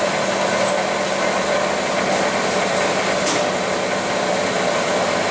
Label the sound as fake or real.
real